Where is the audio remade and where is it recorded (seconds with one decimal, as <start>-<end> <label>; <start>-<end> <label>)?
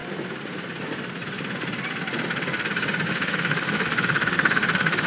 0.0-3.1 recorded; 3.1-5.1 remade